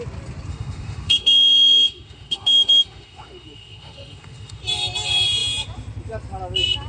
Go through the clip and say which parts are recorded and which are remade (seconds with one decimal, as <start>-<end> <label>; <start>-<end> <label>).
0.0-0.5 recorded; 0.5-4.6 remade; 4.6-6.9 recorded